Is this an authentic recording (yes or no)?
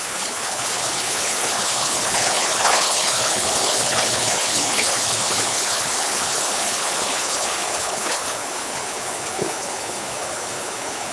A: no